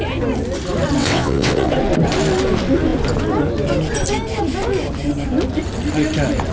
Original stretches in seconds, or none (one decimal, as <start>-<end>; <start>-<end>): 0.0-1.0; 1.7-6.5